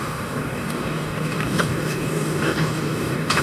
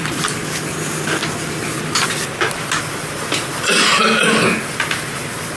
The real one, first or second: second